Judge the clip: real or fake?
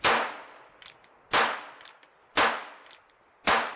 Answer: real